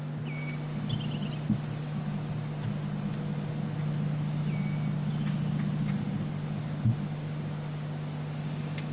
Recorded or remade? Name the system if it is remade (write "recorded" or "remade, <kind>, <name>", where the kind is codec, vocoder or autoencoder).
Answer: recorded